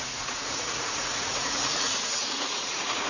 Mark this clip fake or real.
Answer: fake